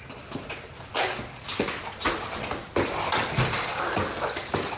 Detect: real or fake real